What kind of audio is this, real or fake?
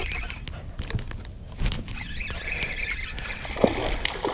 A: real